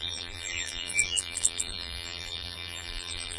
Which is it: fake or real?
fake